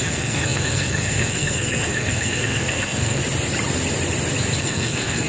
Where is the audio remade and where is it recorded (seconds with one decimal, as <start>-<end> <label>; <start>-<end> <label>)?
0.0-3.2 remade; 3.2-4.6 recorded; 4.6-5.3 remade